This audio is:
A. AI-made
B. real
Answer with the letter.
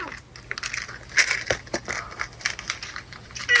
B